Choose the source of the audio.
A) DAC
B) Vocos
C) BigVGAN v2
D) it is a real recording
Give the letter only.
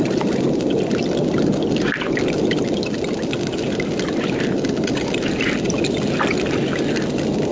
D